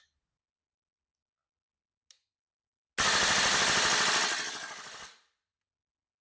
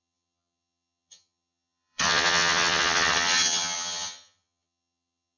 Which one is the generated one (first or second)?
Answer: second